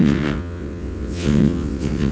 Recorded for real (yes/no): no